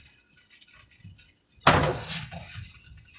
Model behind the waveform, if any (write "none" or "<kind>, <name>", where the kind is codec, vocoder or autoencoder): none